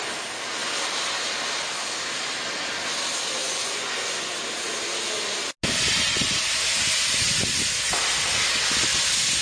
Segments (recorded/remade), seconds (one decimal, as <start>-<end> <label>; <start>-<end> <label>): 0.0-3.4 recorded; 3.4-4.3 remade; 4.3-9.4 recorded